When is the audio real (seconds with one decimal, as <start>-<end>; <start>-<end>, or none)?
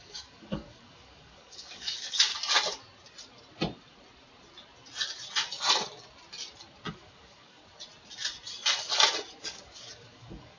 2.3-6.9; 7.6-9.4